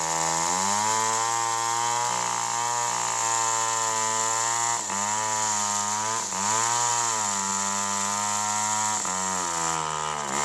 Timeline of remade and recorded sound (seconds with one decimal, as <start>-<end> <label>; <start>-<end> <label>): 0.0-10.4 recorded